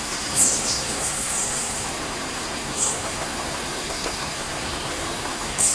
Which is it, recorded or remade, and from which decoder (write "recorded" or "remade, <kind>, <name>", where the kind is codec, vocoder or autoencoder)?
remade, codec, SNAC